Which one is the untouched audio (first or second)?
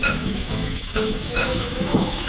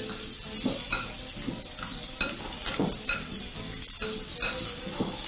second